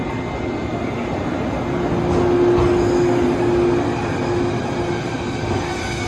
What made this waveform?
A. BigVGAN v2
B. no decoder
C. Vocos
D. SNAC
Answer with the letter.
B